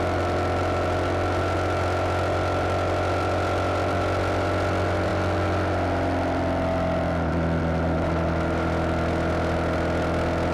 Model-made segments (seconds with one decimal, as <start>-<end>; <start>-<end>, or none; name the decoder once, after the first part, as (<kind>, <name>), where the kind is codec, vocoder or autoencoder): none